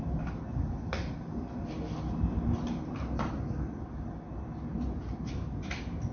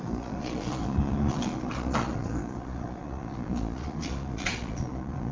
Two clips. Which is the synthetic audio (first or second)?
second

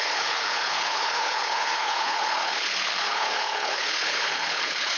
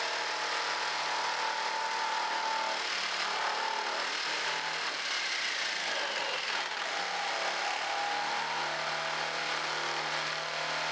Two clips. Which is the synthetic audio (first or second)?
first